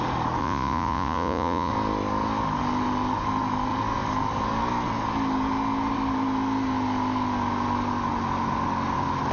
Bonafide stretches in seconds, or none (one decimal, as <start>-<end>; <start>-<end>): 0.0-0.4; 1.7-9.3